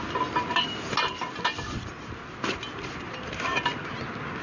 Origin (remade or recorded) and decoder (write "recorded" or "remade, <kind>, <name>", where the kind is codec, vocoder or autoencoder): recorded